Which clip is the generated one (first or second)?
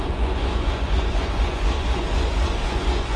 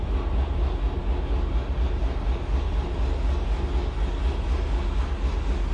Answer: first